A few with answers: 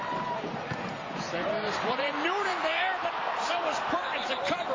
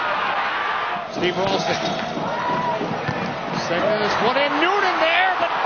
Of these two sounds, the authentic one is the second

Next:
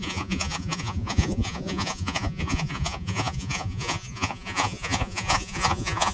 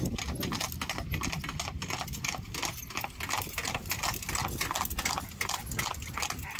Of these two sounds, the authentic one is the second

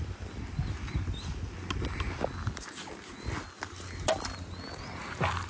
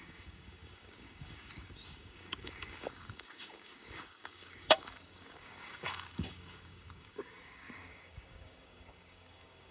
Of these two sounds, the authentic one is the first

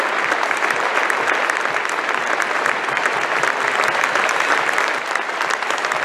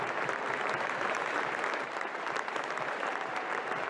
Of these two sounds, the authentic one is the first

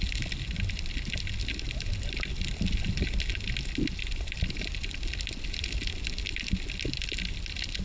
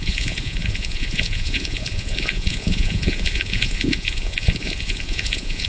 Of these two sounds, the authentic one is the first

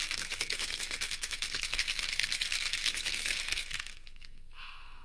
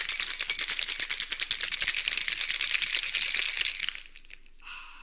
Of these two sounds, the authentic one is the second